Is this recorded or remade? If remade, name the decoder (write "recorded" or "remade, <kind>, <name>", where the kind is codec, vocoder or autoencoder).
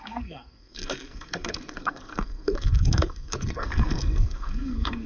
remade, codec, SNAC